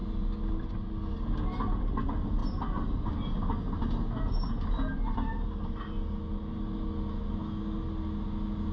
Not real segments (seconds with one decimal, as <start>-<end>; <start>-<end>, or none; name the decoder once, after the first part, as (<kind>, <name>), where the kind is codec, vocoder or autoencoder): none